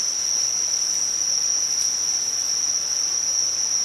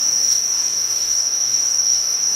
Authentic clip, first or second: first